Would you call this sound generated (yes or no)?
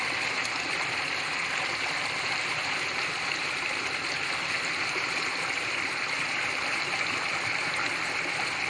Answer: yes